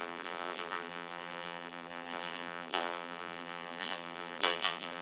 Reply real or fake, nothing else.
fake